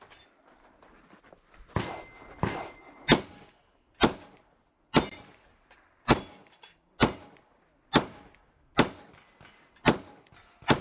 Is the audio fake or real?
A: real